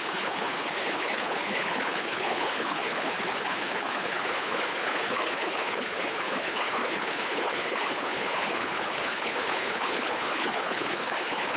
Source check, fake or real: fake